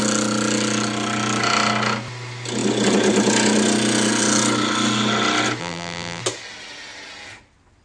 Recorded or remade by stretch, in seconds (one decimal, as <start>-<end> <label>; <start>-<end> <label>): 0.0-5.6 recorded; 5.6-6.2 remade; 6.2-7.8 recorded